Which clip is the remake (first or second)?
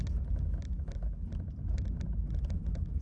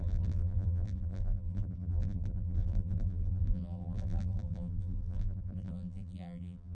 second